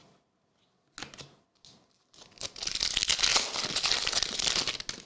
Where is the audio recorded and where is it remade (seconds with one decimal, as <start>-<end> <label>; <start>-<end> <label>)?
0.0-5.1 recorded